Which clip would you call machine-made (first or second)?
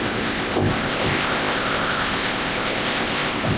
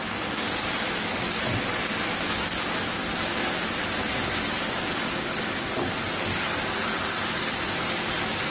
first